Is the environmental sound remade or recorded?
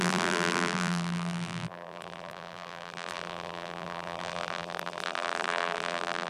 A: remade